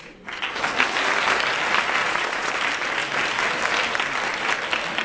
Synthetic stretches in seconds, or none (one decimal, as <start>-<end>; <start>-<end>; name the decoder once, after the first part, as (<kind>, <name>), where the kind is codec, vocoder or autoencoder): 2.0-2.5 (vocoder, Vocos)